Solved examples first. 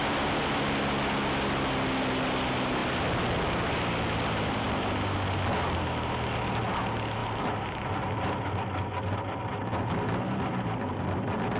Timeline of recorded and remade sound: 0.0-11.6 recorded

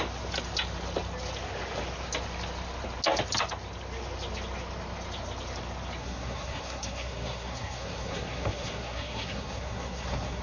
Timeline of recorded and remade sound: 0.0-6.0 recorded; 6.0-10.4 remade